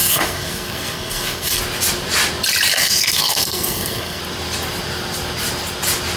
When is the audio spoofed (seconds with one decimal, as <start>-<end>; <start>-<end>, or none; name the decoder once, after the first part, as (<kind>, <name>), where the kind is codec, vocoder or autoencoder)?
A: 0.0-1.6 (codec, SNAC); 2.7-4.2